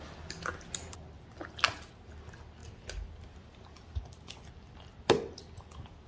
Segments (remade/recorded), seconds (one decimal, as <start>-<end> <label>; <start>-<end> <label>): 0.0-6.1 recorded